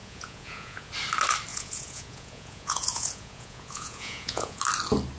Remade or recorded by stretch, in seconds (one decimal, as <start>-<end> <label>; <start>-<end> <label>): 0.0-0.9 remade; 0.9-1.5 recorded; 1.5-4.6 remade; 4.6-5.2 recorded